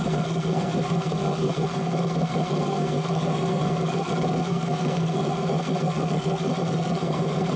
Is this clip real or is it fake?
fake